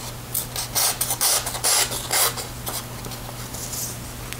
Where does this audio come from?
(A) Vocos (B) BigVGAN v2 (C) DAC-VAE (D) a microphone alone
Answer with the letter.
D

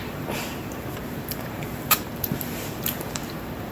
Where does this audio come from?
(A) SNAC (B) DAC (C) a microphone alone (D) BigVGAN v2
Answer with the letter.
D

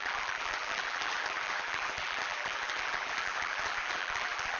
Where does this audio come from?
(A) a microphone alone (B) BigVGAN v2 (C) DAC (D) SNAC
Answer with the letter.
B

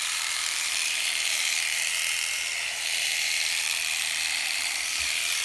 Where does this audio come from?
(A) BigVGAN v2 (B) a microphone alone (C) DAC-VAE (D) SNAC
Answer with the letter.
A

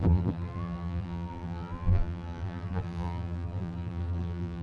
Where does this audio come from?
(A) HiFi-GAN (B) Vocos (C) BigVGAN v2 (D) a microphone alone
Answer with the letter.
C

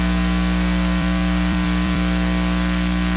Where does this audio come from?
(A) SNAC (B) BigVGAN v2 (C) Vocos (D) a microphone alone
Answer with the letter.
B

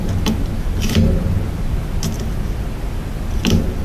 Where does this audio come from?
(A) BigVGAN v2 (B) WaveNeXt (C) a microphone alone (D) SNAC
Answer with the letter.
A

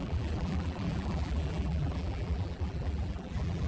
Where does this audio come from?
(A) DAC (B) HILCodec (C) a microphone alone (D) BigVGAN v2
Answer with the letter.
D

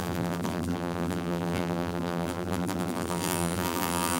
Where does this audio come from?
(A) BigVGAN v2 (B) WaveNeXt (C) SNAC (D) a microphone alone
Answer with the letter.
A